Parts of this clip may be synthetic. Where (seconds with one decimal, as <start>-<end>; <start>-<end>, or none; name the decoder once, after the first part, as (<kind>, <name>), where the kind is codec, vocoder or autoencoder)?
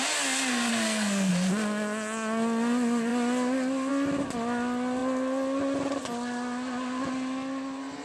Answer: 0.7-1.3 (codec, SNAC)